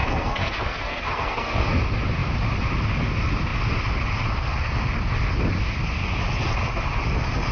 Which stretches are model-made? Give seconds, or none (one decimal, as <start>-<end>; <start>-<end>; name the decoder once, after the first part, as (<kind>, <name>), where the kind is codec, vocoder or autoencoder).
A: 0.0-1.8 (codec, SNAC)